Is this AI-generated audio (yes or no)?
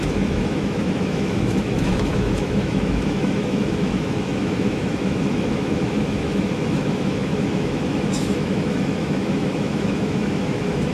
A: yes